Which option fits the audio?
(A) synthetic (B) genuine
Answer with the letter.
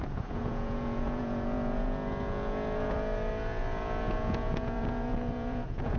A